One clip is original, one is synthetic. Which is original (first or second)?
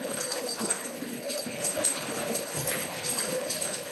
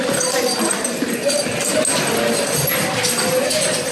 second